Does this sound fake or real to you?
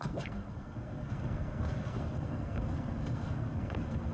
fake